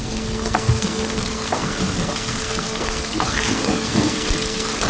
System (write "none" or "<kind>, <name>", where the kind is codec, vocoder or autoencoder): codec, SNAC